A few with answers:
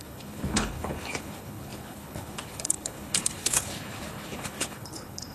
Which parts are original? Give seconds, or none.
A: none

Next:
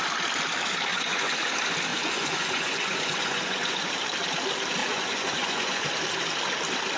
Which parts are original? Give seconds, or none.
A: 0.0-0.9; 1.5-1.9; 3.9-4.8; 5.9-7.0

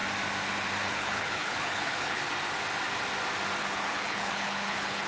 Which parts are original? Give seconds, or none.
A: 0.0-0.9; 2.2-3.6

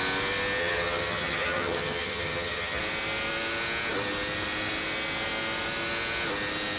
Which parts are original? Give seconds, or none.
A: 0.0-0.6; 2.8-6.8

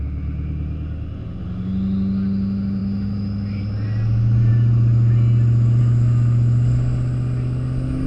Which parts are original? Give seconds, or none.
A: 0.0-8.1

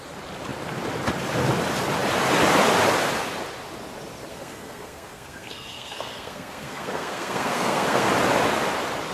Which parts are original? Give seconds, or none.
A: 0.0-4.3; 8.1-9.1